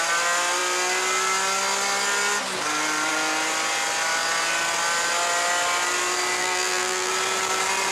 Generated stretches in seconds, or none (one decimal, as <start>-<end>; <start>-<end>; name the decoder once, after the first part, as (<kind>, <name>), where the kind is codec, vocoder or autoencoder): 6.4-7.1 (vocoder, BigVGAN v2)